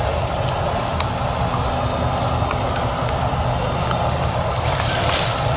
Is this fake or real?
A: real